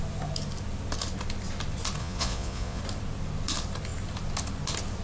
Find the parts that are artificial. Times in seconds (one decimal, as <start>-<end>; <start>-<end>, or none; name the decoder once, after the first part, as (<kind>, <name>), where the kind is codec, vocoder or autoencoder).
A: 2.0-2.8 (vocoder, Vocos)